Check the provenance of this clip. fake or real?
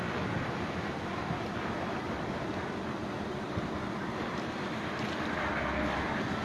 real